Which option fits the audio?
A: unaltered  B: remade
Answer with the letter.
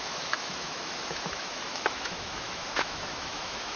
B